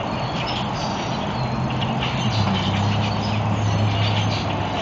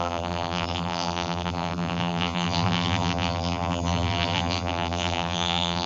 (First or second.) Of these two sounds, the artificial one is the second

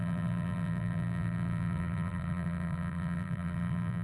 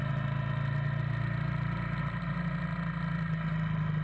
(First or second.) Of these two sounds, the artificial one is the first